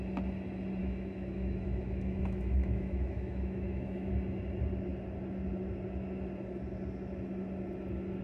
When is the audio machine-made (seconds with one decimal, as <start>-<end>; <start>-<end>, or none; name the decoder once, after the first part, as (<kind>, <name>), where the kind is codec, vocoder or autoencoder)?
0.8-4.1 (autoencoder, DAC-VAE)